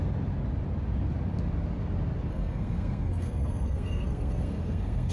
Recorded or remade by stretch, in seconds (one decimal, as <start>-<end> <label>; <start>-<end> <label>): 0.0-2.3 recorded; 2.3-5.1 remade